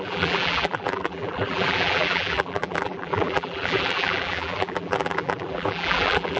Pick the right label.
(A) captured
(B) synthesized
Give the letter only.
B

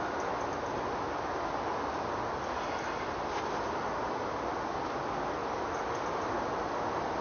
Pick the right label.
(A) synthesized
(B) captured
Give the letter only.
B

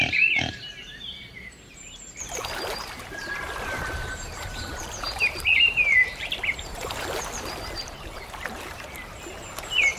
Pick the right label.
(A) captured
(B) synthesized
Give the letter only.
B